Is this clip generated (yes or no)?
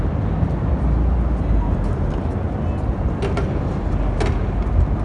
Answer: no